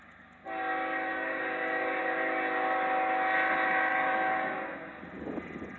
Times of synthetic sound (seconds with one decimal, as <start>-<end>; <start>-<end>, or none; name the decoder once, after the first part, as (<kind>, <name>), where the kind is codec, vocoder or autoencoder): 1.1-2.0 (codec, DAC); 3.9-5.0